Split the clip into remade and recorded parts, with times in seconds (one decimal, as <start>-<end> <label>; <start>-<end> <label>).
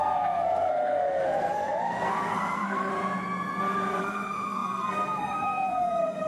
0.0-2.9 remade; 2.9-4.0 recorded; 4.0-6.3 remade